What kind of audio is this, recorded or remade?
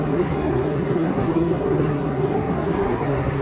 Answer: remade